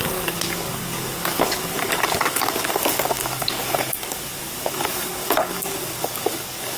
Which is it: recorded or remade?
remade